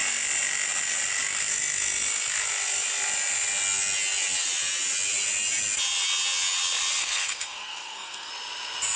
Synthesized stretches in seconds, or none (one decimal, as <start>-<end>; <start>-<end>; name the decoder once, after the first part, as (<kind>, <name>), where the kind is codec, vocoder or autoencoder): 7.0-8.3 (codec, SNAC)